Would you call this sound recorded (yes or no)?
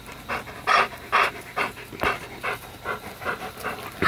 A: yes